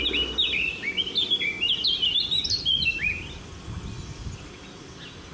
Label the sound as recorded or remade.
recorded